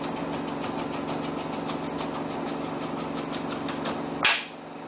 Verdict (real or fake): real